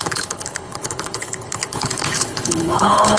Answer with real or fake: fake